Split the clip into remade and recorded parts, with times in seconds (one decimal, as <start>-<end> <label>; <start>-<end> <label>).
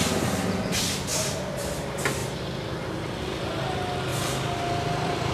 0.0-4.1 recorded; 4.1-5.3 remade